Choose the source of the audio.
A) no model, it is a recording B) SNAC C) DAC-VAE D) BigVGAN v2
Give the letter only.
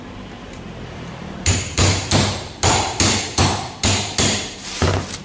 D